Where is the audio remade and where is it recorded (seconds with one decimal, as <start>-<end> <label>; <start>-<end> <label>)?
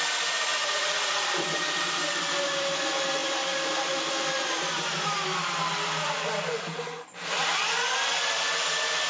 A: 0.0-0.6 recorded; 0.6-1.3 remade; 1.3-9.1 recorded